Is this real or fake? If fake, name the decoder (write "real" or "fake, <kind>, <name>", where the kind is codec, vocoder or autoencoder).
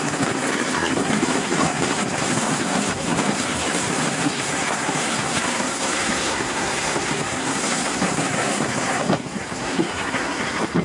fake, codec, SNAC